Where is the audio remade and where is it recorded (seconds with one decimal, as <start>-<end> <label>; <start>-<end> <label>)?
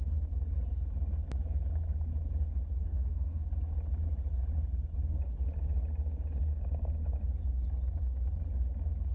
0.0-2.8 recorded; 2.8-3.5 remade; 3.5-9.1 recorded